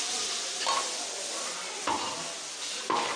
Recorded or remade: recorded